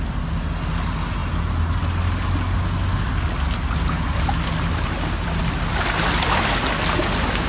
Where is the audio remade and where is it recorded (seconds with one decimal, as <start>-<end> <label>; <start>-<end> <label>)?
0.0-7.5 recorded